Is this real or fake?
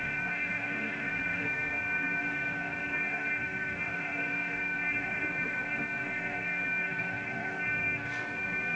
fake